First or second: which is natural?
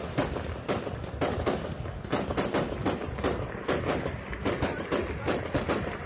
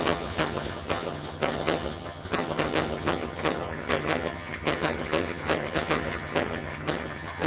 first